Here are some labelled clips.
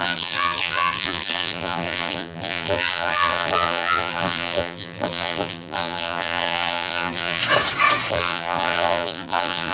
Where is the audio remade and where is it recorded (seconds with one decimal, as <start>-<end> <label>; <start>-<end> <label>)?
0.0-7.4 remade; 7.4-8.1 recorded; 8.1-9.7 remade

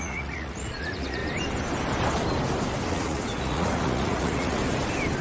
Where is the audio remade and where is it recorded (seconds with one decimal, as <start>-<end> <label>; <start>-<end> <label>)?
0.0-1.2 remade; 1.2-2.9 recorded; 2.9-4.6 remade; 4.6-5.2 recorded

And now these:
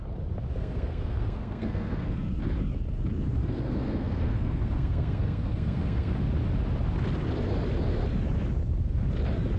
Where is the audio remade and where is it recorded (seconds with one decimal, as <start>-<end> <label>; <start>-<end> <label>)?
0.0-0.6 recorded; 0.6-2.3 remade; 2.3-3.4 recorded; 3.4-6.1 remade; 6.1-9.6 recorded